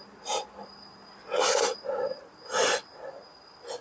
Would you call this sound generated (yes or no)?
no